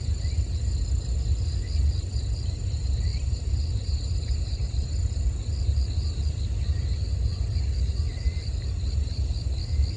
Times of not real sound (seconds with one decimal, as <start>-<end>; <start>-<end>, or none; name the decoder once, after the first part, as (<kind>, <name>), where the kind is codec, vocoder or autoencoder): 3.1-4.9 (vocoder, BigVGAN v2)